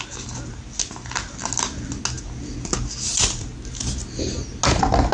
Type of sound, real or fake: real